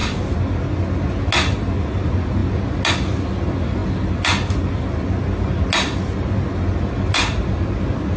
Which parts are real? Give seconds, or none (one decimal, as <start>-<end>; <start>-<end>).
0.0-8.2